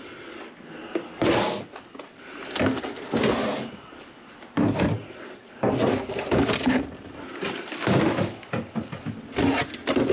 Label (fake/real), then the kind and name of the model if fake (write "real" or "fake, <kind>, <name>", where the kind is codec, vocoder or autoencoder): real